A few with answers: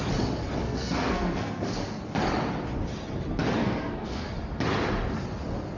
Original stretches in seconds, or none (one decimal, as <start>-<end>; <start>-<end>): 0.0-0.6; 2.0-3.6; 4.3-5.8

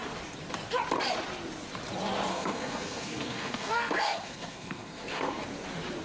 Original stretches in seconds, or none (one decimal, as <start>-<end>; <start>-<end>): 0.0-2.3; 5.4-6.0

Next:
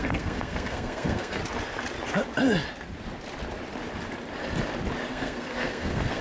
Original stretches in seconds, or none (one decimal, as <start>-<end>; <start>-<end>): 1.4-5.1

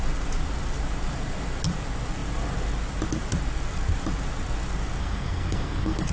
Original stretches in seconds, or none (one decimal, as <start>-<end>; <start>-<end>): 0.0-5.0